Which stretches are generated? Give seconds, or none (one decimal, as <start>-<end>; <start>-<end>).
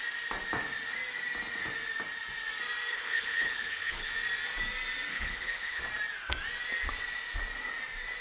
2.9-4.1; 5.1-5.8